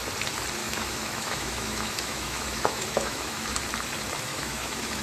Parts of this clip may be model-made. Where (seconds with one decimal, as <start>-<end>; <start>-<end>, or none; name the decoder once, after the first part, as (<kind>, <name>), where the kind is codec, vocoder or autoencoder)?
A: 0.6-3.6 (autoencoder, DAC-VAE); 4.3-5.0